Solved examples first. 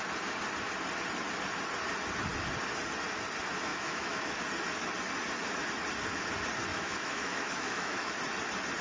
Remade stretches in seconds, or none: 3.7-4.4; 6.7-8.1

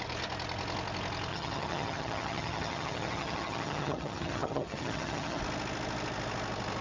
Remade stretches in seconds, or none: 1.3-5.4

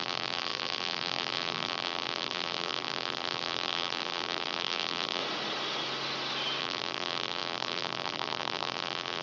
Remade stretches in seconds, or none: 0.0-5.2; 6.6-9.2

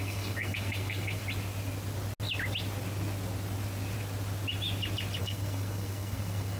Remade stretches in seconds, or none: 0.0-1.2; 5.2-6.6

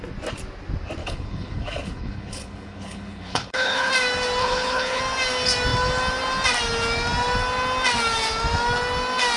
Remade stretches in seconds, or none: 1.0-3.9; 4.4-5.0